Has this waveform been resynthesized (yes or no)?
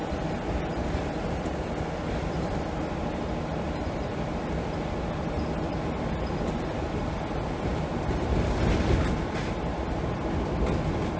no